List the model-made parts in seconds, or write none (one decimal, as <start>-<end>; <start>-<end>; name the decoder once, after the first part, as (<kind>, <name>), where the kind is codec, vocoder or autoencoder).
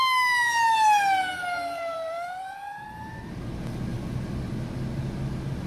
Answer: 1.3-3.4 (vocoder, BigVGAN v2)